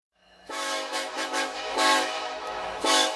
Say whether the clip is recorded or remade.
remade